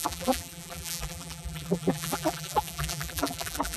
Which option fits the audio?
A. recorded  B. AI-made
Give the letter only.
B